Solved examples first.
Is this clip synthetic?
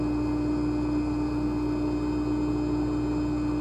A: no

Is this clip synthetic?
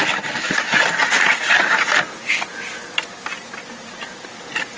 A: no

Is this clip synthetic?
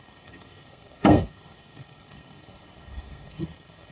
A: yes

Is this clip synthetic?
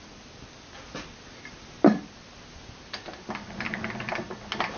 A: no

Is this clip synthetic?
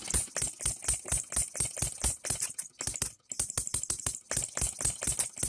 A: no